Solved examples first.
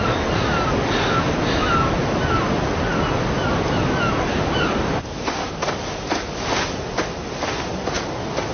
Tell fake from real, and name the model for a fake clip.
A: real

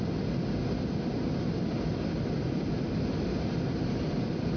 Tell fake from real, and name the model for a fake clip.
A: real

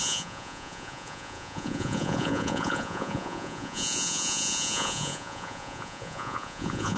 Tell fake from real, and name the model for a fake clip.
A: fake, vocoder, Vocos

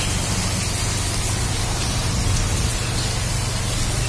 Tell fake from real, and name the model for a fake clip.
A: real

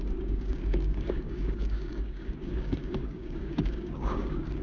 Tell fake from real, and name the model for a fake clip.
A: fake, codec, DAC